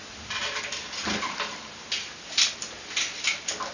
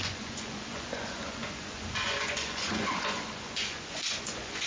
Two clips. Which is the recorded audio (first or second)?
first